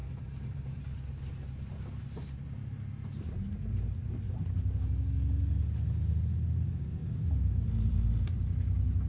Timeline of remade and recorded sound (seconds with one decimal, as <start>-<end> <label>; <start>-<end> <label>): 0.0-0.8 remade; 0.8-9.1 recorded